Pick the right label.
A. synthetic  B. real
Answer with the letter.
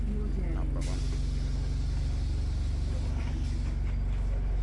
B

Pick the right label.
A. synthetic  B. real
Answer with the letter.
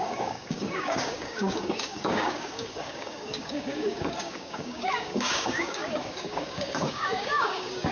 A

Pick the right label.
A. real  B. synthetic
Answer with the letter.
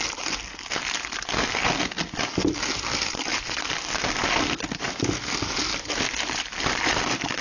A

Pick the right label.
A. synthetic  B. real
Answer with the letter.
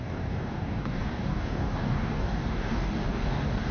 A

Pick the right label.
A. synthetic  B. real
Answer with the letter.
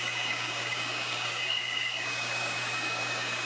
A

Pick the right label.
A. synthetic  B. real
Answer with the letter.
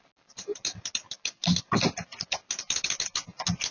B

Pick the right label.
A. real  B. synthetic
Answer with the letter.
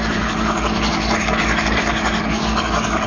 B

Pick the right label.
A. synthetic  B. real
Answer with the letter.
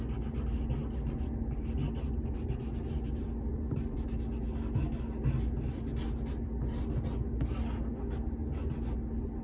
B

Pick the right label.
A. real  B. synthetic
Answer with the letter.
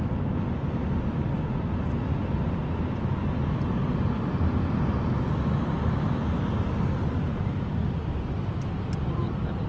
A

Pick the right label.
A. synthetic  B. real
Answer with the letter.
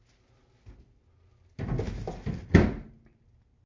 B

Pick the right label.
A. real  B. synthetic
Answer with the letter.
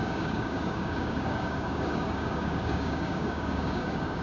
B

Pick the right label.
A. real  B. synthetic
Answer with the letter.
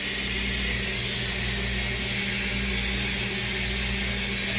A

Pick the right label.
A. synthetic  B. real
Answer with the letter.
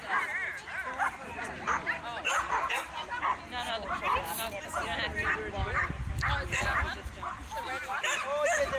B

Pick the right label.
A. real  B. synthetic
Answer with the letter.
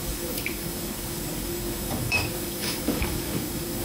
B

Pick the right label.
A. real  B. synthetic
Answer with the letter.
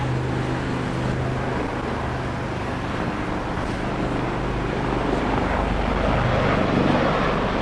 A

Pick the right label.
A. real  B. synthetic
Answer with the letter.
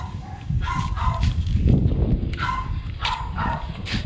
B